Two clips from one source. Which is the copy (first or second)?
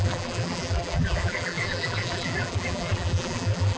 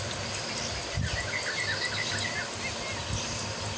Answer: first